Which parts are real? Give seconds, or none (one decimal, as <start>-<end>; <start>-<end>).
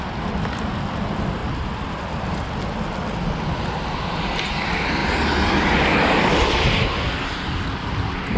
0.0-8.4